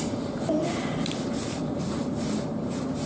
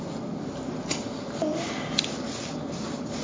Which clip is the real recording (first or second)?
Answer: second